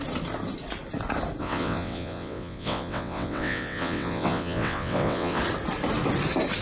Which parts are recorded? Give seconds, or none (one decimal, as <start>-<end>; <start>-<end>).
0.0-1.4; 5.4-6.6